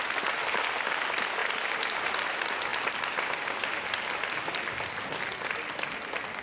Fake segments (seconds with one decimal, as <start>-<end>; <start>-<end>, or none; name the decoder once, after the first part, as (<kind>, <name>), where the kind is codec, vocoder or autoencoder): none